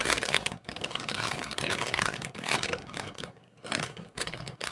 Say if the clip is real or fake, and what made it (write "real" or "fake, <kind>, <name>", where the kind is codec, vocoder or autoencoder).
fake, codec, SNAC